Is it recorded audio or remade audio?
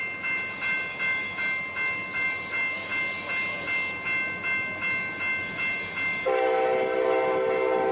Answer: recorded